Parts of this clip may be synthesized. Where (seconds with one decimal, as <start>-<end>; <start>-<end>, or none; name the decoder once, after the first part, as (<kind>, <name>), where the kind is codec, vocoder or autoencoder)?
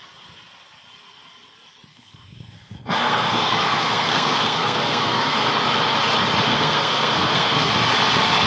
1.9-5.5 (codec, SNAC); 6.5-7.7